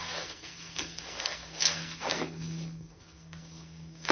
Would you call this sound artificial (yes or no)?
yes